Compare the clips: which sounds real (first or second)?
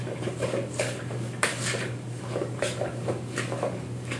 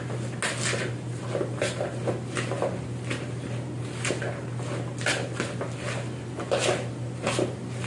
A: second